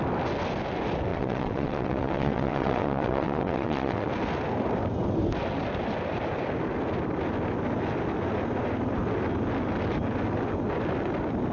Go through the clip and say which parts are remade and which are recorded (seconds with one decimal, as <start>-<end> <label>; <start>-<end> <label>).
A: 0.0-1.1 recorded; 1.1-4.1 remade; 4.1-11.5 recorded